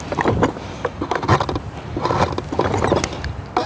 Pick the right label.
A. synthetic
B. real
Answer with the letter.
B